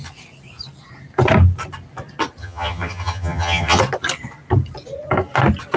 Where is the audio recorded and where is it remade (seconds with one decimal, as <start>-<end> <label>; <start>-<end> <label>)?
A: 0.0-2.4 recorded; 2.4-3.8 remade; 3.8-5.8 recorded